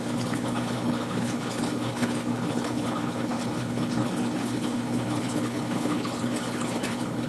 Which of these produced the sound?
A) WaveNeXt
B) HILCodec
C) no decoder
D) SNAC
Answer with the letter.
B